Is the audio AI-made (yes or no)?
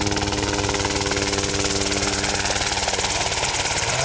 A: no